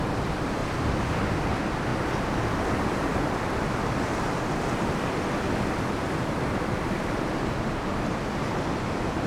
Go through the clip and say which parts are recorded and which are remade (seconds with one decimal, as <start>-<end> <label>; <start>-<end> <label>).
0.0-0.6 remade; 0.6-1.3 recorded; 1.3-1.9 remade; 1.9-2.6 recorded; 2.6-9.3 remade